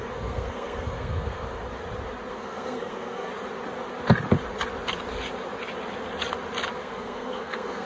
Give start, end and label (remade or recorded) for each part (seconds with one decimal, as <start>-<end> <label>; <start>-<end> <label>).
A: 0.0-1.6 remade; 1.6-2.3 recorded; 2.3-3.3 remade; 3.3-6.8 recorded; 6.8-7.9 remade